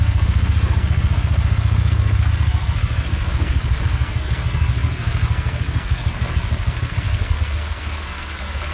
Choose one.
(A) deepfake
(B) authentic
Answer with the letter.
A